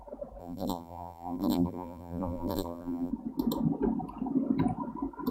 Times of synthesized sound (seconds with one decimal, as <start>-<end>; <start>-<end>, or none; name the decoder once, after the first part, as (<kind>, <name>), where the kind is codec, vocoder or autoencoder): 0.4-3.1 (vocoder, BigVGAN v2)